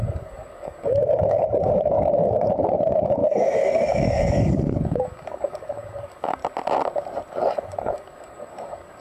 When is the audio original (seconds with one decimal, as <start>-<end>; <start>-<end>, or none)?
6.4-7.3

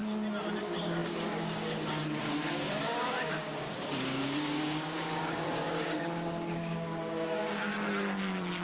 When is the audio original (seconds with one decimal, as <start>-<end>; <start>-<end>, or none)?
0.0-0.6; 7.6-8.6

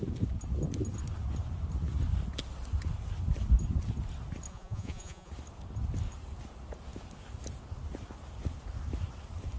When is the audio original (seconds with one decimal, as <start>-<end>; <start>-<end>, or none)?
0.0-4.5; 5.3-9.6

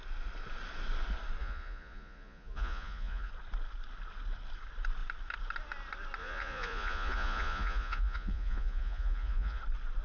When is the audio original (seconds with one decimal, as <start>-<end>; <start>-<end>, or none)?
0.0-1.4; 3.3-6.2; 9.6-10.0